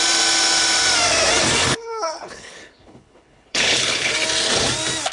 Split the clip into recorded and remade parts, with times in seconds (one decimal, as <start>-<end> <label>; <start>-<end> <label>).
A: 0.0-1.7 recorded; 1.7-4.1 remade; 4.1-5.1 recorded